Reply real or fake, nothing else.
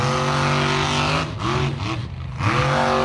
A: real